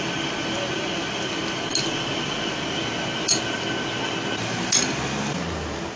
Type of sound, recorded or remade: recorded